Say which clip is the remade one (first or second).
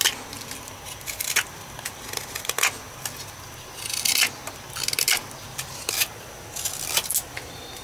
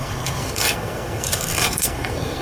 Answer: second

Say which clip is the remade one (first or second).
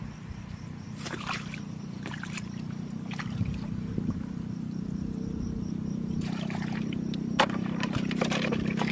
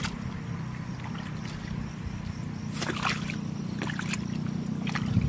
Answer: first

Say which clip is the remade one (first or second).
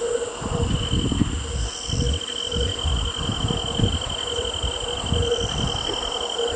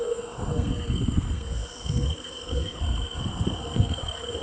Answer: second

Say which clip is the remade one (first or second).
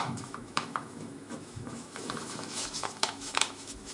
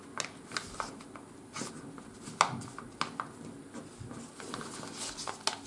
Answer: first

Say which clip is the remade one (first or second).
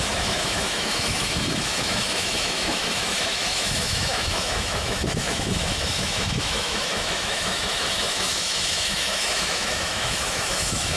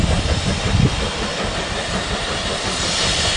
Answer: first